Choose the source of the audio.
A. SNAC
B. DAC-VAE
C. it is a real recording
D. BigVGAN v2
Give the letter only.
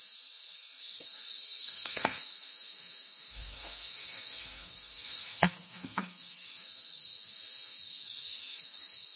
A